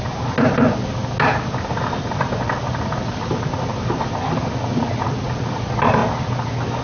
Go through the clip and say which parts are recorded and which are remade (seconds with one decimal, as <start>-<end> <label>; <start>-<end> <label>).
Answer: 0.0-6.8 recorded

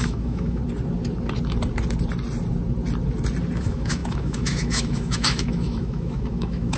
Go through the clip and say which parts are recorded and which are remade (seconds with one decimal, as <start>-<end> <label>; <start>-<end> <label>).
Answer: 0.0-0.6 remade; 0.6-3.6 recorded; 3.6-6.8 remade

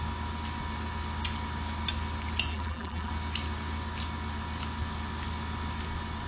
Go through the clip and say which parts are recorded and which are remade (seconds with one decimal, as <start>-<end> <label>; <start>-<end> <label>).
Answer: 0.0-2.5 recorded; 2.5-3.1 remade; 3.1-6.3 recorded

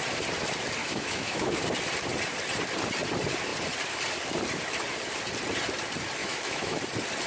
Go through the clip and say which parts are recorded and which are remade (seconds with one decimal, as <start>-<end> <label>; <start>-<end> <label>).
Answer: 0.0-0.8 recorded; 0.8-1.6 remade; 1.6-6.2 recorded; 6.2-6.8 remade; 6.8-7.3 recorded

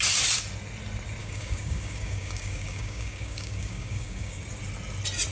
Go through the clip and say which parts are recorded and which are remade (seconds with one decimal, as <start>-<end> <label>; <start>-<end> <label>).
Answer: 0.0-1.2 recorded; 1.2-4.4 remade; 4.4-5.3 recorded

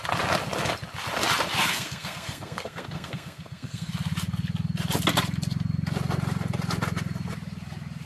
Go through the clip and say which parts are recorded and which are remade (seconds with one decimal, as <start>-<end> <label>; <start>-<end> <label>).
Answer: 0.0-1.6 recorded; 1.6-3.9 remade; 3.9-8.1 recorded